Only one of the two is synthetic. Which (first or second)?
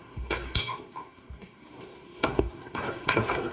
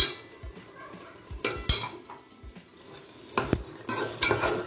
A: first